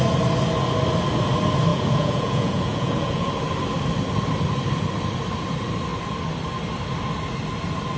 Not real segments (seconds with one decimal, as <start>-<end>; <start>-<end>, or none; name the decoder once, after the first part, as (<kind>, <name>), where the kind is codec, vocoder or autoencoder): 1.7-3.3 (vocoder, Vocos)